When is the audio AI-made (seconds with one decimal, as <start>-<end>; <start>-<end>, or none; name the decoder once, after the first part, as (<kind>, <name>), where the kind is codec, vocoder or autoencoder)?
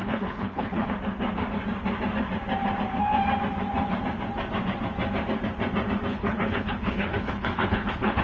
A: 0.0-0.9 (codec, HILCodec); 6.1-8.2